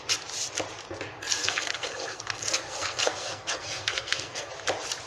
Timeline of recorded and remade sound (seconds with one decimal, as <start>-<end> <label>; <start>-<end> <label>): 0.0-1.4 recorded; 1.4-4.5 remade; 4.5-5.1 recorded